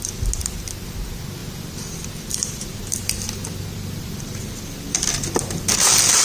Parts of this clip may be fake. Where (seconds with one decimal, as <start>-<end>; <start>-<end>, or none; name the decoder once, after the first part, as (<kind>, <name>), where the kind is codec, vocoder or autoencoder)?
1.4-5.1 (vocoder, BigVGAN v2)